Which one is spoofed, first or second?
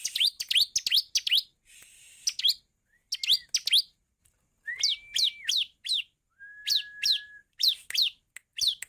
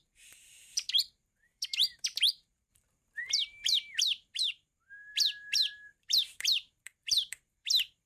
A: second